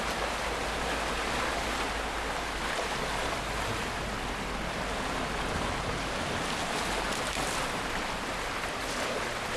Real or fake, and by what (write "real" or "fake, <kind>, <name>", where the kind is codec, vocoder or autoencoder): real